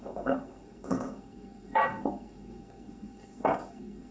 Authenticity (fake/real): fake